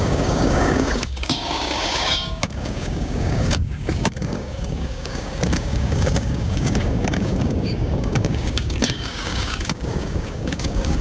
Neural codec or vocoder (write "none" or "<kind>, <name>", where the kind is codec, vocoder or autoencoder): codec, DAC